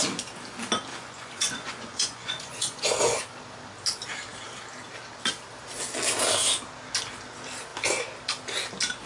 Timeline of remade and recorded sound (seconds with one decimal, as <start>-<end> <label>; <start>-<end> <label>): 0.0-0.9 recorded; 0.9-3.2 remade; 3.2-9.1 recorded